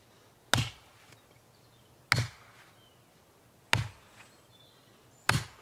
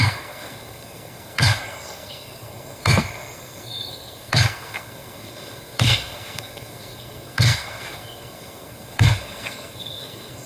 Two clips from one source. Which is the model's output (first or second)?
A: second